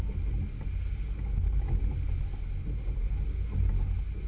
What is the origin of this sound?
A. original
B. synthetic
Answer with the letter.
A